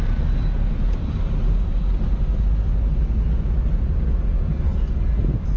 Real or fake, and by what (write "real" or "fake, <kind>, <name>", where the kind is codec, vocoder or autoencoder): real